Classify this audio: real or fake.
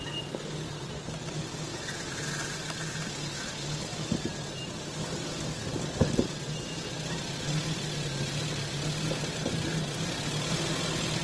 real